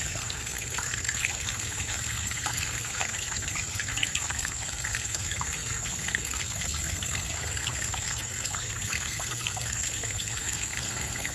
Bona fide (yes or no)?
no